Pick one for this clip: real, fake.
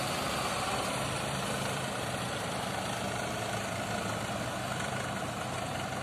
fake